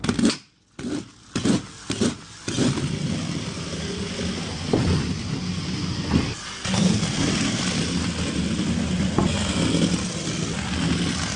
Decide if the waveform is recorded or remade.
recorded